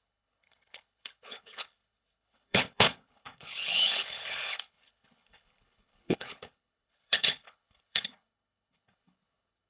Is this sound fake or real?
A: fake